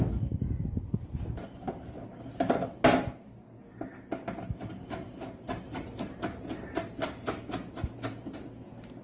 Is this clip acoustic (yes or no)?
yes